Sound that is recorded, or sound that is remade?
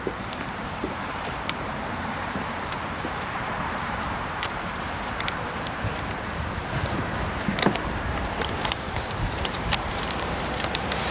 remade